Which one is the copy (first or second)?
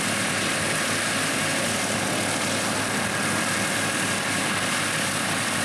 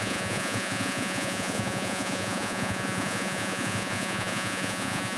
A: second